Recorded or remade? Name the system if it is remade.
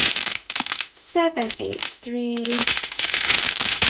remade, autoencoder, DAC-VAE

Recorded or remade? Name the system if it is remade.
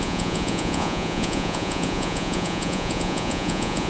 remade, vocoder, Vocos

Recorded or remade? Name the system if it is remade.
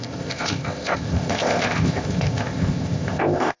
remade, codec, ZipCodec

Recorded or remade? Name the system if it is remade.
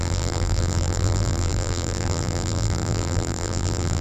remade, vocoder, BigVGAN v2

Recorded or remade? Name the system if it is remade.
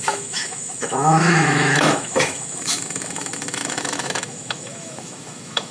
remade, autoencoder, DAC-VAE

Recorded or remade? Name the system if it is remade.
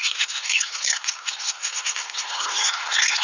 remade, codec, SNAC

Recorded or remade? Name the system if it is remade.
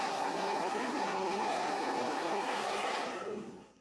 remade, codec, SNAC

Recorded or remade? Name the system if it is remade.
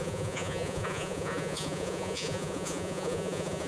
remade, vocoder, Vocos